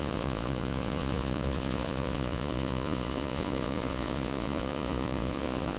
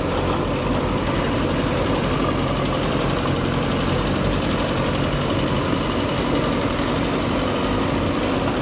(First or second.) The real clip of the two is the second